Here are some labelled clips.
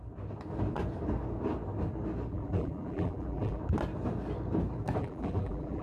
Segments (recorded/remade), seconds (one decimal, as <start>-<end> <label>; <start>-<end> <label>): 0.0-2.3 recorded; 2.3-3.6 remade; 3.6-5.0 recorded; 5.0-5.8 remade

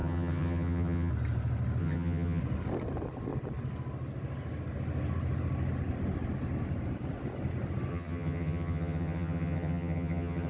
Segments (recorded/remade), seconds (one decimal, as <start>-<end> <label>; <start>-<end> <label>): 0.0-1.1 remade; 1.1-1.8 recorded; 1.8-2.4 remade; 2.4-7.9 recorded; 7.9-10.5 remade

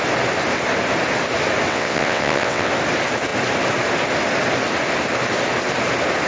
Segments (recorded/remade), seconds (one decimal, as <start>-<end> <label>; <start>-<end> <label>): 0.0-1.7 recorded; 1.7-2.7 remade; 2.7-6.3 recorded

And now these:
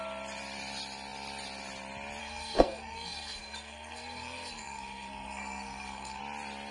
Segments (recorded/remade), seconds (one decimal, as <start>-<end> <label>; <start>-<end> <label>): 0.0-2.2 recorded; 2.2-6.2 remade; 6.2-6.7 recorded

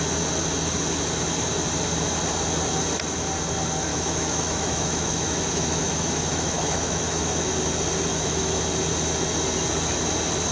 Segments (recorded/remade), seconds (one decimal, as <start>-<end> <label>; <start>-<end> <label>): 0.0-3.9 recorded; 3.9-7.5 remade; 7.5-8.1 recorded; 8.1-8.6 remade; 8.6-10.5 recorded